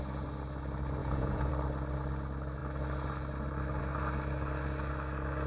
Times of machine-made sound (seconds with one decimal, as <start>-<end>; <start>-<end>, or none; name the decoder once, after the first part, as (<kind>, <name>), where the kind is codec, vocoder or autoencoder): 1.0-1.5 (vocoder, Vocos)